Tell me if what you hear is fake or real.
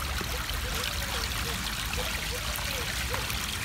real